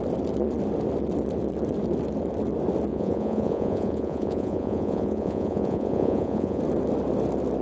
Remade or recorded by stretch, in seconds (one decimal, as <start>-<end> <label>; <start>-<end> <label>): 0.0-2.9 recorded; 2.9-6.6 remade; 6.6-7.6 recorded